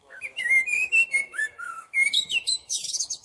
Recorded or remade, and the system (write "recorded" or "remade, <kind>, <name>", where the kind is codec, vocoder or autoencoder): remade, autoencoder, DAC-VAE